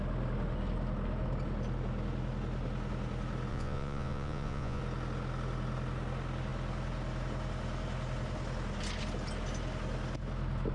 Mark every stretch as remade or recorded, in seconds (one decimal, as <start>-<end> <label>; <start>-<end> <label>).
0.0-3.5 recorded; 3.5-4.8 remade; 4.8-10.7 recorded